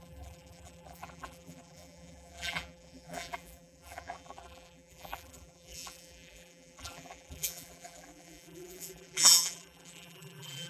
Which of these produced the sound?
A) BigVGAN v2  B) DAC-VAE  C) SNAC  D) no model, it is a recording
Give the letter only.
A